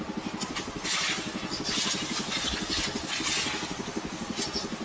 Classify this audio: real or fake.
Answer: real